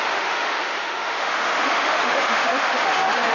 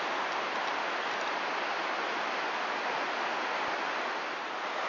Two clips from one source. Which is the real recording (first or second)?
second